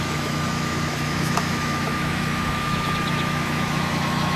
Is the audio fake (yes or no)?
yes